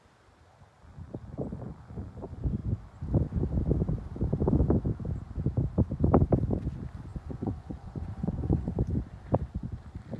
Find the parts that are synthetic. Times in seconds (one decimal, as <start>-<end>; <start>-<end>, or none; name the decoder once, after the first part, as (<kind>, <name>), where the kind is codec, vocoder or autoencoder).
7.1-8.7 (vocoder, Vocos)